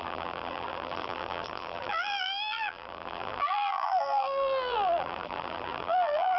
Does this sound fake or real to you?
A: fake